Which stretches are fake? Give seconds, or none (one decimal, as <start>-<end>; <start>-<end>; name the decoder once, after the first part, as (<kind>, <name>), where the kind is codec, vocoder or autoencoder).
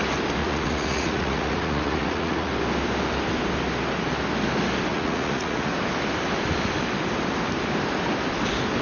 0.4-2.5 (vocoder, Vocos); 4.9-5.7